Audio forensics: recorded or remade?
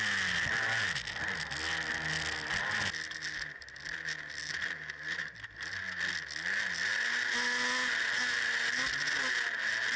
recorded